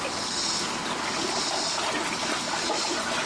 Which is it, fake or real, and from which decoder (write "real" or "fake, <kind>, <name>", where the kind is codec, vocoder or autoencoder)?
real